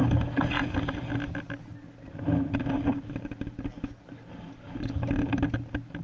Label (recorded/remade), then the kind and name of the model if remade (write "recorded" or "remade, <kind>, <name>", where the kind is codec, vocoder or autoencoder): recorded